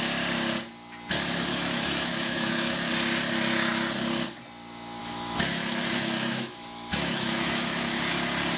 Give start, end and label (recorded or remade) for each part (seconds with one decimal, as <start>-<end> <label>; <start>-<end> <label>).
0.0-1.5 recorded; 1.5-2.9 remade; 2.9-5.0 recorded; 5.0-8.1 remade; 8.1-8.6 recorded